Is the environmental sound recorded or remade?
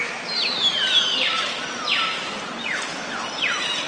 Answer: recorded